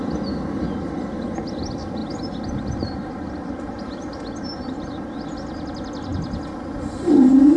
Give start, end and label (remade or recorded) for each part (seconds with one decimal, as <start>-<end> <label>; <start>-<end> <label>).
0.0-2.0 recorded; 2.0-5.2 remade; 5.2-7.6 recorded